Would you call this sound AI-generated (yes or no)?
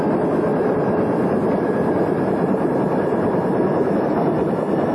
no